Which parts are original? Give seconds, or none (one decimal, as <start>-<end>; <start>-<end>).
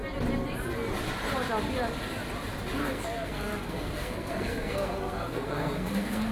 0.0-2.8